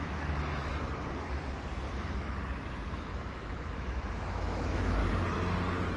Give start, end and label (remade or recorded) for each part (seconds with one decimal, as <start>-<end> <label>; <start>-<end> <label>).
0.0-0.7 remade; 0.7-2.6 recorded; 2.6-5.0 remade; 5.0-6.0 recorded

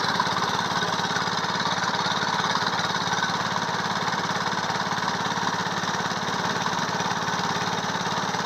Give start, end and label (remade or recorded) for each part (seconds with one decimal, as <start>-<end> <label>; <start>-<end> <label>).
0.0-8.5 recorded

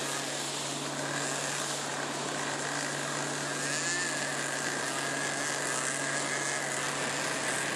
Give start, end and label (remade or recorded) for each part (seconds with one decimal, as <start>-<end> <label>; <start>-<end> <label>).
0.0-7.8 recorded